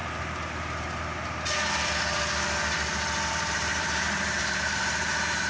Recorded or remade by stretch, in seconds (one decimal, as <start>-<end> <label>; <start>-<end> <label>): 0.0-3.3 recorded; 3.3-5.5 remade